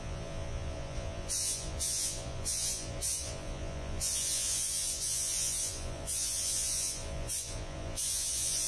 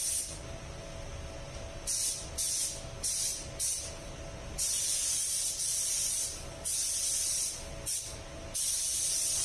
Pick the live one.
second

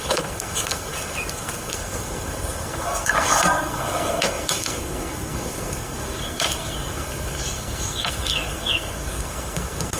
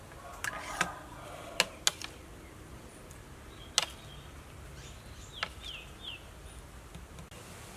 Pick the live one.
second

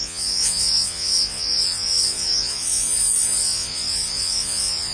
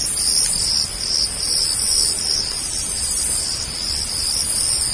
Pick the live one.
second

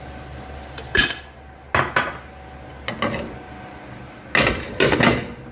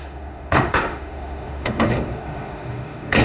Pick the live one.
first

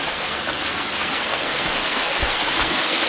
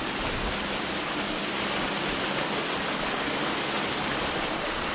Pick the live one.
second